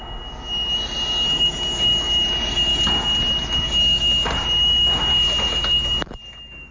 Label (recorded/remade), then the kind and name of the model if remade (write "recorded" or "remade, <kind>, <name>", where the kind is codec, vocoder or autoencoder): recorded